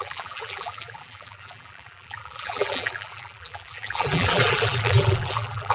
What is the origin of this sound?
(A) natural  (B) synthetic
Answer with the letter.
B